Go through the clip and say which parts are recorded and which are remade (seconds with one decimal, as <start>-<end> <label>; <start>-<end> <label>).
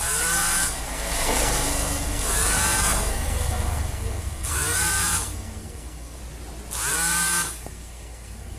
0.0-6.2 remade; 6.2-6.9 recorded; 6.9-8.6 remade